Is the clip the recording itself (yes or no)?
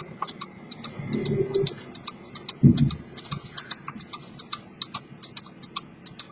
yes